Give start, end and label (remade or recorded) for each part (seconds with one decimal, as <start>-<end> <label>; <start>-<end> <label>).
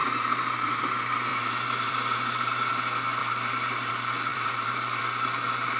0.0-0.8 remade; 0.8-1.3 recorded; 1.3-2.7 remade; 2.7-3.2 recorded; 3.2-3.9 remade; 3.9-4.3 recorded; 4.3-5.0 remade; 5.0-5.8 recorded